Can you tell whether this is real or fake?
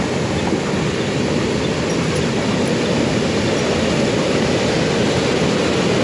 real